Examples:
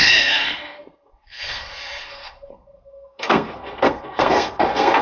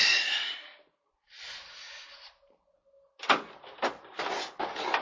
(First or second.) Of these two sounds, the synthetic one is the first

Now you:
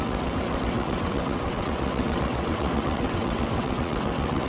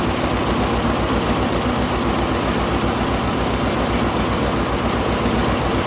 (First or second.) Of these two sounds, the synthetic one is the first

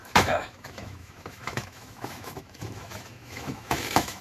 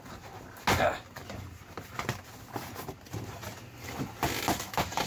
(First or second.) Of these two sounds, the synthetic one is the first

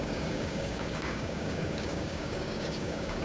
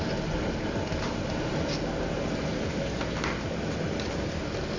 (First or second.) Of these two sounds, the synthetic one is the first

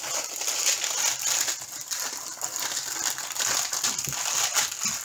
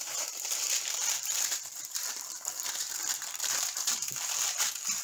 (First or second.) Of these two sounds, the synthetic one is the second